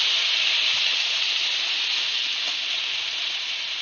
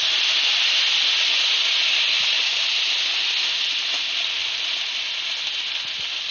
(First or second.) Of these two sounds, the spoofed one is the first